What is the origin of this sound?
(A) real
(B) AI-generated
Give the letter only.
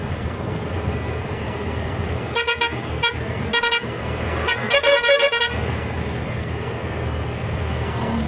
B